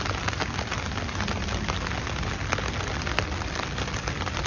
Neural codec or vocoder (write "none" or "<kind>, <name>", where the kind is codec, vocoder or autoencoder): none